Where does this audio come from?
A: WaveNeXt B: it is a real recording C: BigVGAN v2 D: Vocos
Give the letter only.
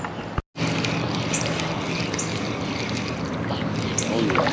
B